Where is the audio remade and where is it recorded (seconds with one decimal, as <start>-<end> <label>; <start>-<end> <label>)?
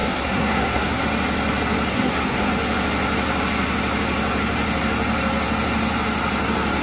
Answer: 0.0-1.0 remade; 1.0-1.9 recorded; 1.9-2.5 remade; 2.5-6.8 recorded